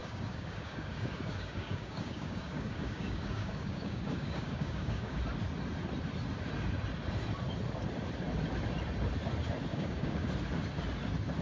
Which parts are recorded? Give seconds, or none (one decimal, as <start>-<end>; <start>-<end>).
5.2-9.7; 10.3-11.4